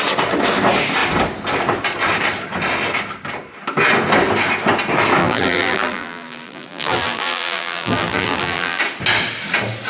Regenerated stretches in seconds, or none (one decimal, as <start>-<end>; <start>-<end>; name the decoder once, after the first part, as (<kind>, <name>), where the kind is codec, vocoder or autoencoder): 5.2-8.8 (vocoder, BigVGAN v2)